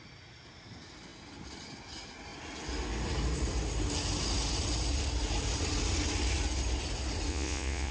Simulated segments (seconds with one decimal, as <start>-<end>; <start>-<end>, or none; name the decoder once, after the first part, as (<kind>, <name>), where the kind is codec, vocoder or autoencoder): 7.3-7.9 (vocoder, Vocos)